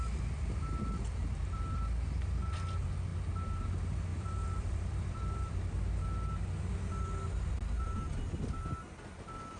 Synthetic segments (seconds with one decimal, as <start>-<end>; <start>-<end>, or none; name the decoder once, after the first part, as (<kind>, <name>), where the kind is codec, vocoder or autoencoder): 1.2-2.4 (vocoder, BigVGAN v2); 3.1-3.6; 4.1-5.5